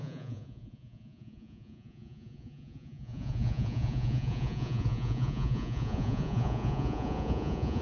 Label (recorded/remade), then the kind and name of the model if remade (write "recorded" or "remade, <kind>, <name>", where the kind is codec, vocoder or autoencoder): remade, vocoder, Vocos